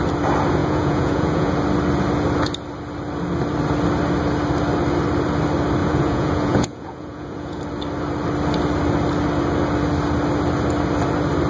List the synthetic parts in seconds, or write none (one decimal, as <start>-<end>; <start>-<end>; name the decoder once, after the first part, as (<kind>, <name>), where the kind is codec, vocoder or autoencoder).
0.6-1.5 (vocoder, Vocos); 5.8-7.6